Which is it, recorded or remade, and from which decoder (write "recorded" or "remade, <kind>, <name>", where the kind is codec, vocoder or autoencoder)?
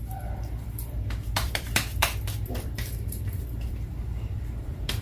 remade, vocoder, BigVGAN v2